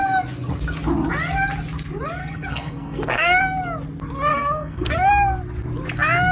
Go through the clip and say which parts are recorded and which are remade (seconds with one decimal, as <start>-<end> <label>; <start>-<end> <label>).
0.0-2.2 recorded; 2.2-3.4 remade; 3.4-4.3 recorded; 4.3-5.1 remade; 5.1-6.3 recorded